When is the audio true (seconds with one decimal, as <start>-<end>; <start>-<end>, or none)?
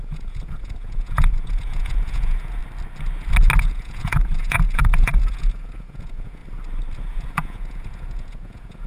2.6-3.6; 6.4-7.0